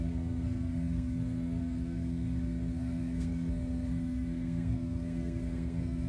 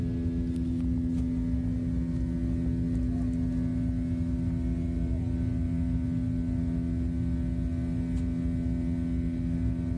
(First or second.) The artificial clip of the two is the first